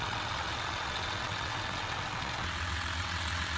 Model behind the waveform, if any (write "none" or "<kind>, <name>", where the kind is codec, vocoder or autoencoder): vocoder, WaveNeXt